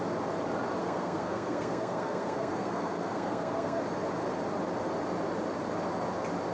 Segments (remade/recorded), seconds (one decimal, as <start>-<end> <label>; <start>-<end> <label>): 0.0-0.8 recorded; 0.8-3.8 remade; 3.8-6.5 recorded